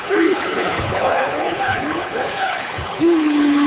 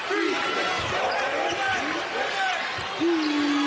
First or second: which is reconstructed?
first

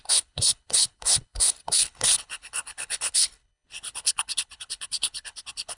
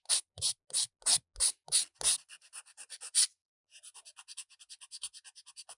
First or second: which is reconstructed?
first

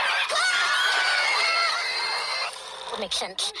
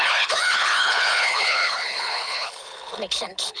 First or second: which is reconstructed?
second